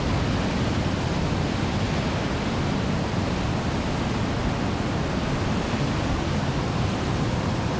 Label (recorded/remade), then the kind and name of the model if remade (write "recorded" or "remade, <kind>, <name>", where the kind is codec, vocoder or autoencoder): recorded